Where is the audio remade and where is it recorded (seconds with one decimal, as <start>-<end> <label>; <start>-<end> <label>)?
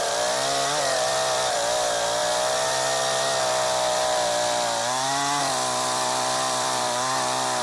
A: 0.0-2.2 remade; 2.2-5.4 recorded; 5.4-7.6 remade